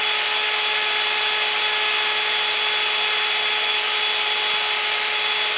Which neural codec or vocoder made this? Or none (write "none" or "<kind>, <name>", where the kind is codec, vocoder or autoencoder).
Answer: none